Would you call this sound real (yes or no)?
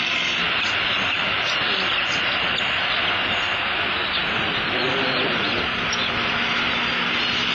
yes